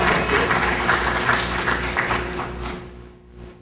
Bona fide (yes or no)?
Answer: yes